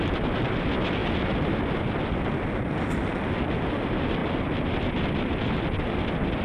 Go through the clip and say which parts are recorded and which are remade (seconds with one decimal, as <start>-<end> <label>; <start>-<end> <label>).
0.0-4.2 recorded; 4.2-4.9 remade; 4.9-6.4 recorded